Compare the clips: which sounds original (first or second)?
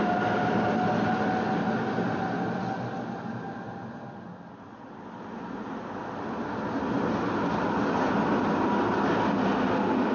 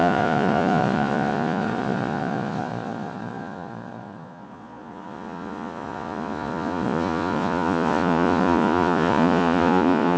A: first